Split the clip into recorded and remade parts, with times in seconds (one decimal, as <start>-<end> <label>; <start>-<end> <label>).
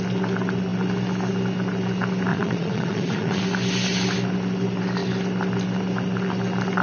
0.0-2.3 recorded; 2.3-3.4 remade; 3.4-6.8 recorded